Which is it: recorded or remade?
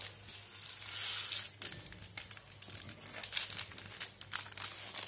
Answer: recorded